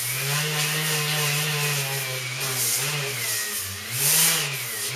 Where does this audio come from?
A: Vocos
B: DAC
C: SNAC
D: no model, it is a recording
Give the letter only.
D